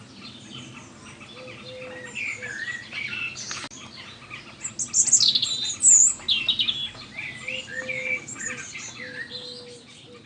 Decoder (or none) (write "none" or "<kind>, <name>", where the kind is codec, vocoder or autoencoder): none